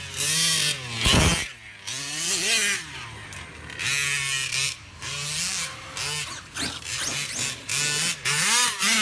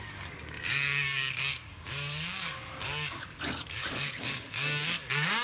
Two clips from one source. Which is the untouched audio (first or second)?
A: first